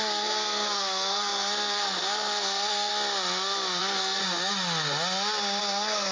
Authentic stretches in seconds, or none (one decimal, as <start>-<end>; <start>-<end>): 2.9-3.8; 4.2-5.6